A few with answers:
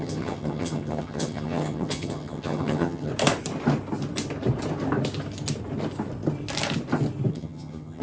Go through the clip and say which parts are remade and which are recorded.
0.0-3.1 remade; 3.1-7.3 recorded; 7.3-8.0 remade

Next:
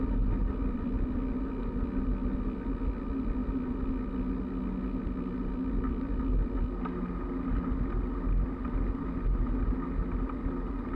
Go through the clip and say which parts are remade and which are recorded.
0.0-0.4 recorded; 0.4-1.6 remade; 1.6-10.9 recorded

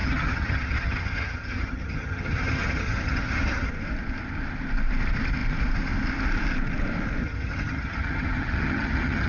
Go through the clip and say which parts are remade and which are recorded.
0.0-3.7 remade; 3.7-7.2 recorded; 7.2-9.3 remade

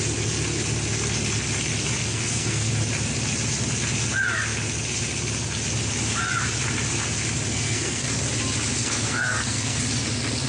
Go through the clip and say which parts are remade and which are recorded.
0.0-2.1 recorded; 2.1-2.7 remade; 2.7-7.5 recorded; 7.5-8.2 remade; 8.2-8.8 recorded; 8.8-9.8 remade; 9.8-10.5 recorded

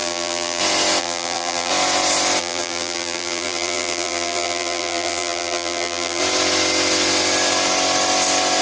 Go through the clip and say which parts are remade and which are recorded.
0.0-0.6 remade; 0.6-1.0 recorded; 1.0-1.7 remade; 1.7-2.4 recorded; 2.4-6.2 remade; 6.2-8.6 recorded

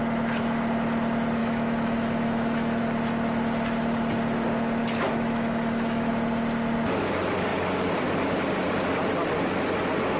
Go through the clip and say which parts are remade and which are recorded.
0.0-1.4 recorded; 1.4-2.8 remade; 2.8-4.8 recorded; 4.8-6.1 remade; 6.1-10.2 recorded